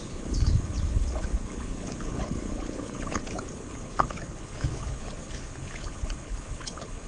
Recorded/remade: remade